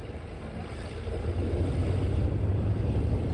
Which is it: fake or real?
real